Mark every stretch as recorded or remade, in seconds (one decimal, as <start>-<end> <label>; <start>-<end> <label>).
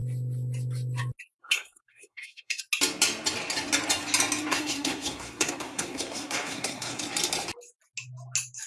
0.0-1.4 recorded; 1.4-2.6 remade; 2.6-4.5 recorded; 4.5-7.0 remade; 7.0-8.7 recorded